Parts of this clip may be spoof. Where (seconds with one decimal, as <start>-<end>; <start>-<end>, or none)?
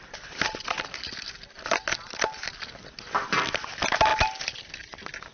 none